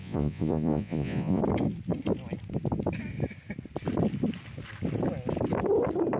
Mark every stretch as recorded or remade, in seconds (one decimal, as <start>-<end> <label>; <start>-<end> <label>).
0.0-1.4 remade; 1.4-6.2 recorded